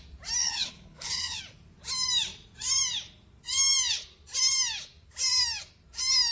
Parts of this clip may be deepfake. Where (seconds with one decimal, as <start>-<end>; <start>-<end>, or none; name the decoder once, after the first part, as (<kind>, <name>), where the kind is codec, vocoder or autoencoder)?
0.4-1.4 (codec, HILCodec)